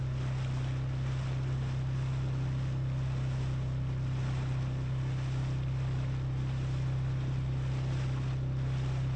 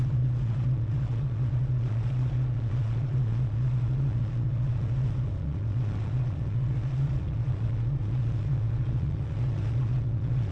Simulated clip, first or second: second